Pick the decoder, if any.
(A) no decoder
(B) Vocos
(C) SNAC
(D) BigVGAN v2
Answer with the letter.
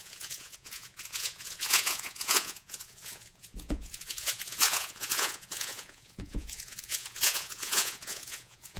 B